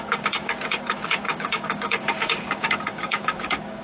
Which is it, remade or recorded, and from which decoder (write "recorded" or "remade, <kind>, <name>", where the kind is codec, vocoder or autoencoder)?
remade, codec, DAC